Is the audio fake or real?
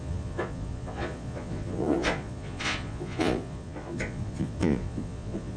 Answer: fake